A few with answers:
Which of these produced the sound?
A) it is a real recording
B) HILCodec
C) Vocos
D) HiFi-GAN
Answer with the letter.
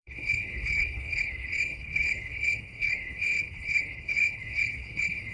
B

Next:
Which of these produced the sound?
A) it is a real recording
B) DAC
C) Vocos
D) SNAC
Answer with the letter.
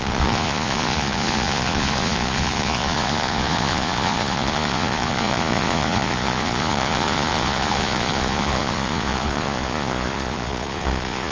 C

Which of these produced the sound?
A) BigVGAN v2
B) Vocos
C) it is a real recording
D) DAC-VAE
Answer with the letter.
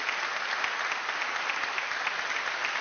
C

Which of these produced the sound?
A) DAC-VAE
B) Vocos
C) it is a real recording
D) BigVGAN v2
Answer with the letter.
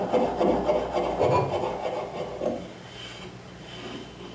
C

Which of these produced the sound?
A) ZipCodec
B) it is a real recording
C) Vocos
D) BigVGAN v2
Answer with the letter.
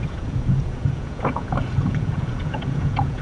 C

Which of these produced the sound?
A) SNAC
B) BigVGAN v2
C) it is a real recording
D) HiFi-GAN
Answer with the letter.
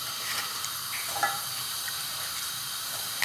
B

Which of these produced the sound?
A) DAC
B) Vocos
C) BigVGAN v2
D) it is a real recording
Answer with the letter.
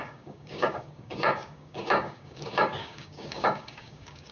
A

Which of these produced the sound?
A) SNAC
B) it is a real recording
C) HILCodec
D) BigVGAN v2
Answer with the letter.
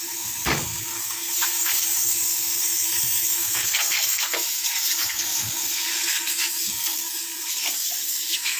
A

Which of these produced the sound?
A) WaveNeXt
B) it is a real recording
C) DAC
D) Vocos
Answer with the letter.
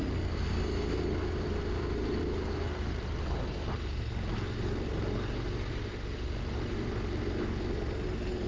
B